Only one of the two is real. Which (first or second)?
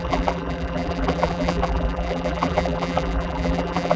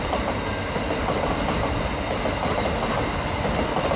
second